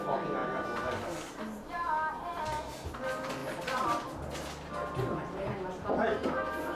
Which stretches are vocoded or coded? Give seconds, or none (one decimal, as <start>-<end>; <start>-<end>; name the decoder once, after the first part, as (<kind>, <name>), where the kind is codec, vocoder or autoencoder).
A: 5.7-6.3 (vocoder, BigVGAN v2)